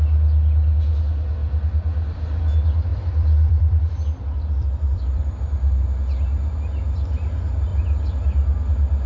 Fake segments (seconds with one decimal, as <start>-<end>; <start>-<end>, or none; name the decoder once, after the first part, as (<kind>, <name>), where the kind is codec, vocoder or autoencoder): 1.4-2.4 (vocoder, BigVGAN v2); 2.9-5.7; 7.7-8.7